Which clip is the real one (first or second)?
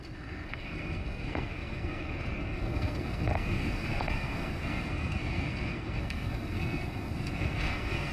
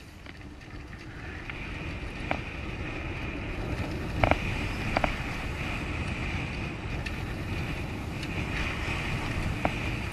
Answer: second